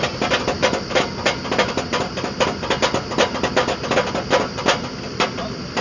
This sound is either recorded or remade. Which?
recorded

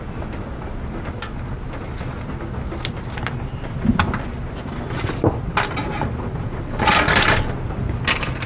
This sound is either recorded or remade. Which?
recorded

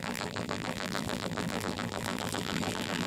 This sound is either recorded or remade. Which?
remade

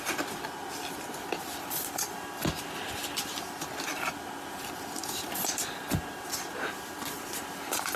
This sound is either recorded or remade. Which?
remade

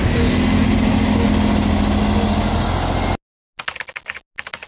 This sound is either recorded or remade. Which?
recorded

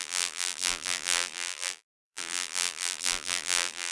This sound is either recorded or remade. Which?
remade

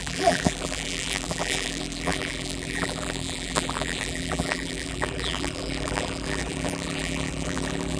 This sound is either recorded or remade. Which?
remade